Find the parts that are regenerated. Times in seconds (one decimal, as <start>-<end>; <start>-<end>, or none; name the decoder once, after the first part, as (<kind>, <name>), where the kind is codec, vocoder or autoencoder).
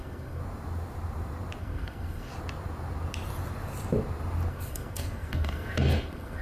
0.0-0.4 (codec, SNAC); 1.6-2.3; 4.5-6.4